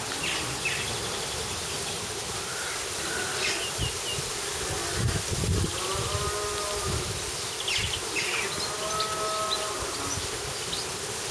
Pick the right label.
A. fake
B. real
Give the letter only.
B